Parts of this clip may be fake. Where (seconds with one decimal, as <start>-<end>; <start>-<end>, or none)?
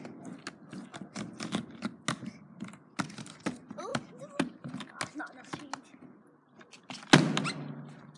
none